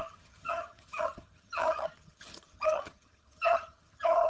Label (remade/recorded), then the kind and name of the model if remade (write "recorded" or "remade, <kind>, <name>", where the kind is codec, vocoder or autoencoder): remade, vocoder, HiFi-GAN